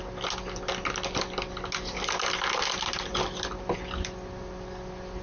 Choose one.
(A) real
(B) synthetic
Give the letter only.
A